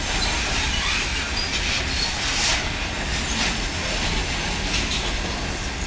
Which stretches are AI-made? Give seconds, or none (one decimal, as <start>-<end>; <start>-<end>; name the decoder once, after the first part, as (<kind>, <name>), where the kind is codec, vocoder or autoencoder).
none